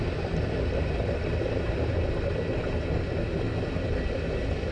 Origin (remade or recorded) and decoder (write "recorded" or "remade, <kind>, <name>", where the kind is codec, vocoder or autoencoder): recorded